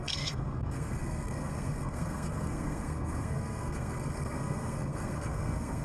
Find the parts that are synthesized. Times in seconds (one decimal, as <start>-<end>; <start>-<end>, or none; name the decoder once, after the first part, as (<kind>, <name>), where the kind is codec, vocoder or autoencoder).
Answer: 0.0-5.8 (codec, SNAC)